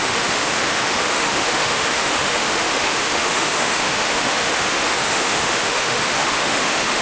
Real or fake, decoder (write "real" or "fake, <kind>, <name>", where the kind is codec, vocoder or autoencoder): fake, autoencoder, DAC-VAE